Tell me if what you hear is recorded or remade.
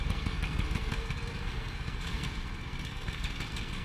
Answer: remade